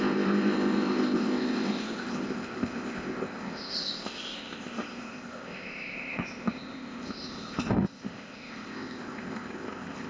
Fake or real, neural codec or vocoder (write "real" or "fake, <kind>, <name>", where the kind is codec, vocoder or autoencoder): fake, codec, ZipCodec